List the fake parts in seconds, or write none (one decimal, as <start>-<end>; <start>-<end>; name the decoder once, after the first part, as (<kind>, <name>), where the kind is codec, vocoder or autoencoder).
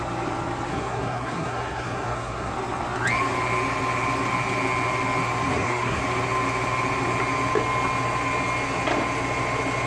0.7-2.5 (codec, SNAC); 5.5-6.0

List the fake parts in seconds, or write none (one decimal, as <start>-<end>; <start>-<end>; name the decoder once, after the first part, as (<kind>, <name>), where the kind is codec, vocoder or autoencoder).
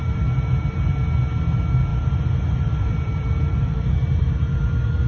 0.0-1.0 (vocoder, BigVGAN v2); 1.9-4.3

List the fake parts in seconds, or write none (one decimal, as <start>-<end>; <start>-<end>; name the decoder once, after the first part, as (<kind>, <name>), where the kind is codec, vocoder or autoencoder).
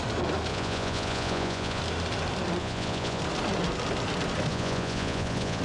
0.5-1.8 (vocoder, Vocos); 2.6-3.2; 4.5-5.6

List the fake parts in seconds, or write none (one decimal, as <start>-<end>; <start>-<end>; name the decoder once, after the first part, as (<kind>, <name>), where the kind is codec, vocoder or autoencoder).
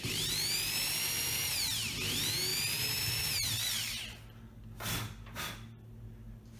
none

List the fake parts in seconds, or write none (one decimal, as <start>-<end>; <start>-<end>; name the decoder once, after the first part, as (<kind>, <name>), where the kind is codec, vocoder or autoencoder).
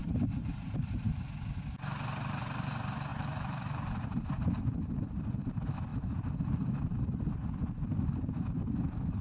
0.0-1.0 (vocoder, BigVGAN v2); 3.1-4.7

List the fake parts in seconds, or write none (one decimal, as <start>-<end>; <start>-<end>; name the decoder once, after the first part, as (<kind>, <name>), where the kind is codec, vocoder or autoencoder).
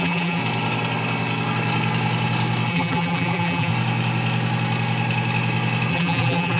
0.0-0.4 (vocoder, BigVGAN v2); 2.7-3.7; 5.9-6.6